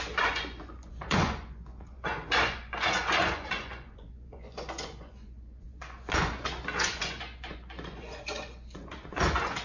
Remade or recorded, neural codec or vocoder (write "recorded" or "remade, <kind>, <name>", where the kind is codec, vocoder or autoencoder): remade, vocoder, Vocos